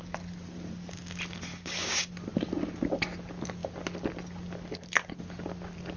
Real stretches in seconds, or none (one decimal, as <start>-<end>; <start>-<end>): 0.0-1.5; 2.1-6.0